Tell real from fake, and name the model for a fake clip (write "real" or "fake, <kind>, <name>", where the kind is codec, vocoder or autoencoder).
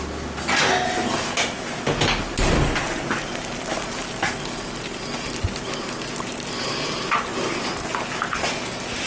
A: real